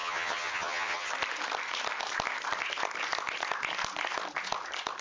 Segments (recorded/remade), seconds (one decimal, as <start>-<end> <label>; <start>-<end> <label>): 0.0-1.1 remade; 1.1-5.0 recorded